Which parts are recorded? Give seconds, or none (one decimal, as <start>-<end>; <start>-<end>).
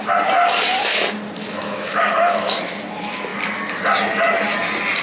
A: 0.0-1.4; 2.7-5.0